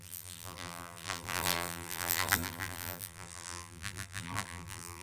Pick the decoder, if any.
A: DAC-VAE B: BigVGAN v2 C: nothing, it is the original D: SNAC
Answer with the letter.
B